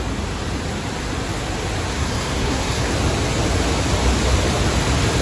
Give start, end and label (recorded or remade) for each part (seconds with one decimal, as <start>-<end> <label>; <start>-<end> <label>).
0.0-1.9 recorded; 1.9-2.9 remade; 2.9-5.2 recorded